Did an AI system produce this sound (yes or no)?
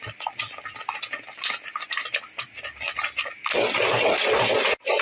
no